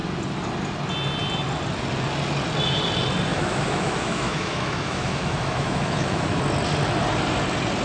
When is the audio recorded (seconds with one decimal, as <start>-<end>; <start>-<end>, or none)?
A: 0.0-3.3; 6.4-7.8